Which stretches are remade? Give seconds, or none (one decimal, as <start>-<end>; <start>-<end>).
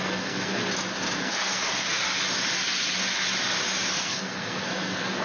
0.0-0.6; 1.2-2.0; 3.9-5.2